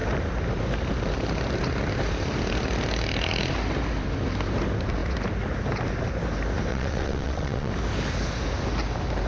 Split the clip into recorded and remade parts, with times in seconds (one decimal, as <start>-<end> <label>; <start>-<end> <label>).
0.0-6.7 recorded; 6.7-7.7 remade; 7.7-9.3 recorded